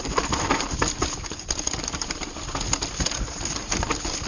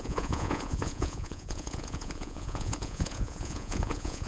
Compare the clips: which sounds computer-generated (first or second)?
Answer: second